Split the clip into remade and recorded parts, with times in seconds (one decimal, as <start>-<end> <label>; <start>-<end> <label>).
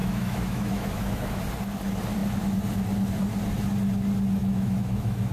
0.0-1.4 remade; 1.4-4.4 recorded; 4.4-5.3 remade